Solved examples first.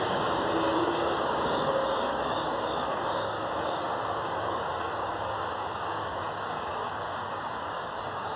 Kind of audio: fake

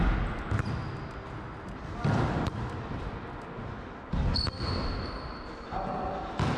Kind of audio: real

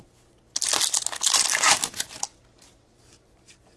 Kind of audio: real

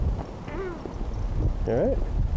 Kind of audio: real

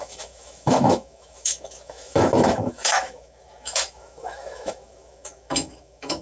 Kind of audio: fake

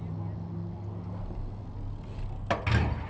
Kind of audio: real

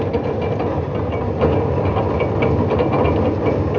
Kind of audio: real